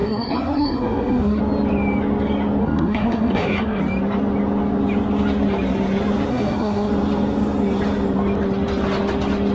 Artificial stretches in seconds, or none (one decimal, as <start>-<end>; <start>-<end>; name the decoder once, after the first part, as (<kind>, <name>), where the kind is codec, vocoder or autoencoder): 0.0-1.4 (codec, SNAC); 2.6-3.8; 6.3-6.9